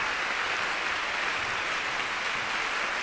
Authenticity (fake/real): real